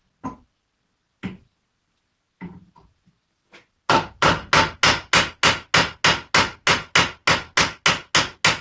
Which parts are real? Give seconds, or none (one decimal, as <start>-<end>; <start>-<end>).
0.0-8.6